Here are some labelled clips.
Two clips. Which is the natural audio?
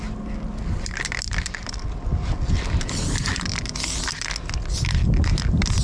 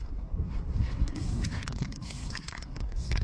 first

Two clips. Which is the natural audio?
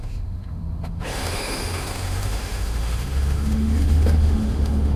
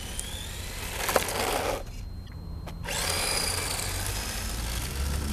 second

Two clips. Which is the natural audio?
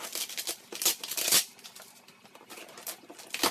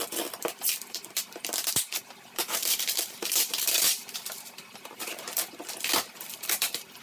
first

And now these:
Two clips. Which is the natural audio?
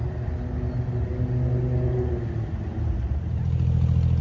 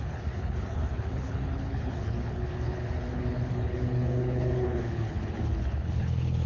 first